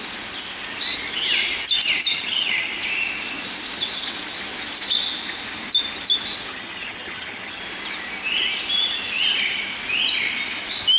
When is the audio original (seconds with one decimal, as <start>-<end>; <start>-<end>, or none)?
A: 0.0-2.1; 2.7-6.5; 7.6-11.0